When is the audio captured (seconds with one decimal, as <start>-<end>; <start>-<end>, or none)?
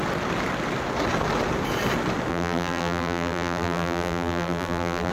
0.0-2.3